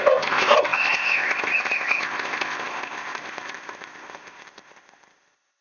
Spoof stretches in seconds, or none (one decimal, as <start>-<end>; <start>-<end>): 0.0-5.6